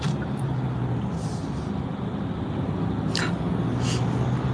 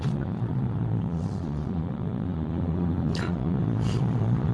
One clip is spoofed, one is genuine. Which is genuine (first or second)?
first